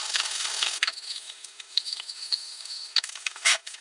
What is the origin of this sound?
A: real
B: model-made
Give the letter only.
B